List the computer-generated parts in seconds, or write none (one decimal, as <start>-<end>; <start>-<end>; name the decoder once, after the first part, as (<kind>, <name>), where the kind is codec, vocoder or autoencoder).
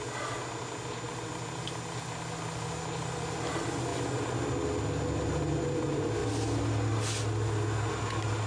none